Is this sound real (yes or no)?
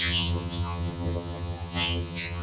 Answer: no